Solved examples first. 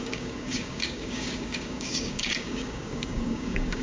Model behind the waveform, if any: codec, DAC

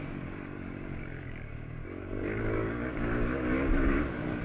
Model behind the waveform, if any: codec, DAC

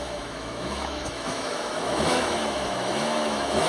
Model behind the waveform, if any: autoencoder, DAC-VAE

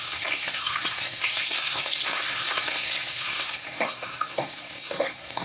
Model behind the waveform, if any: codec, SNAC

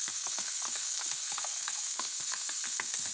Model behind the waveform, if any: codec, SNAC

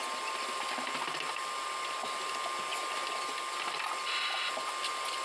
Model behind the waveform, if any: none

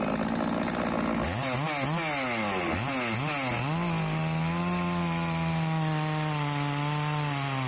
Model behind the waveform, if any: none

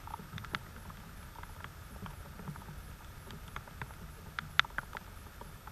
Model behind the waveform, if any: none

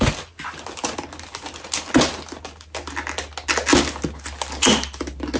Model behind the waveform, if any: none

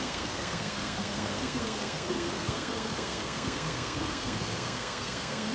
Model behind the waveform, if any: codec, SNAC